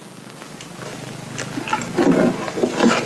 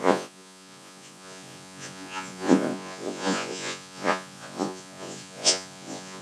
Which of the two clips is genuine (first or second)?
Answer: first